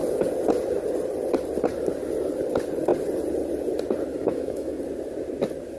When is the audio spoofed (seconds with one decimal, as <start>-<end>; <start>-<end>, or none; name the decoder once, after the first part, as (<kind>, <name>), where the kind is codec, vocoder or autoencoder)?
4.1-4.8 (autoencoder, DAC-VAE)